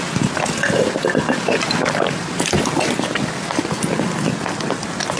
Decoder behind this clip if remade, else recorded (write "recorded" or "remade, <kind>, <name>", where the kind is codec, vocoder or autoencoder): recorded